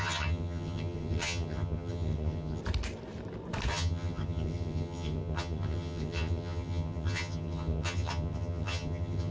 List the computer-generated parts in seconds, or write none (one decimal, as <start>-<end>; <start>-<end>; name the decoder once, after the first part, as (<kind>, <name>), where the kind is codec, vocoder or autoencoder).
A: 0.0-2.6 (vocoder, HiFi-GAN); 3.7-9.3